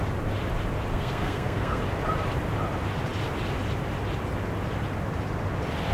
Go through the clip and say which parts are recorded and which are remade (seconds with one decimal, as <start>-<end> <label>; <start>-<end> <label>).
0.0-0.9 recorded; 0.9-1.8 remade; 1.8-5.9 recorded